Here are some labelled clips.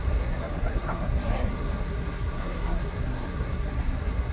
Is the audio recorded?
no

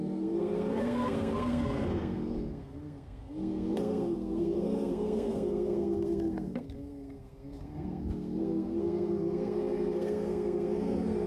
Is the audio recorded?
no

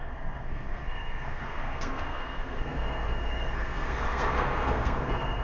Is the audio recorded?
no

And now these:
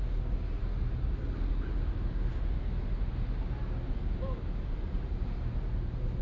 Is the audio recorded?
yes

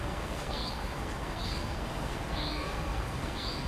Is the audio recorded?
no